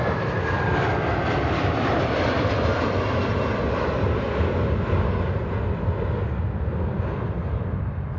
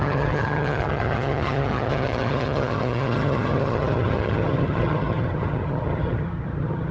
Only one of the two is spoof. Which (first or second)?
second